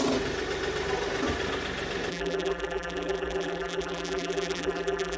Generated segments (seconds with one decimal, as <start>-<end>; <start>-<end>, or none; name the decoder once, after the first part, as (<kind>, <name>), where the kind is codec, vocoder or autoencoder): 2.1-5.2 (vocoder, BigVGAN v2)